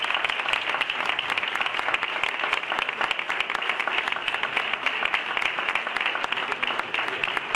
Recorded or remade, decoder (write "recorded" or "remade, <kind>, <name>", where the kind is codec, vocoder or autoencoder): recorded